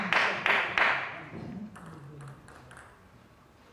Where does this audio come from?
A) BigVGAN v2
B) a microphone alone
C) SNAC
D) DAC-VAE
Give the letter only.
B